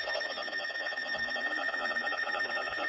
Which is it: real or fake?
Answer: fake